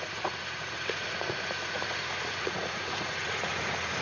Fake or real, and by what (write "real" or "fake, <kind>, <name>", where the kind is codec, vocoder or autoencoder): fake, vocoder, Vocos